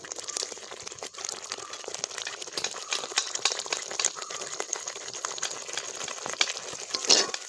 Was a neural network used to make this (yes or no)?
no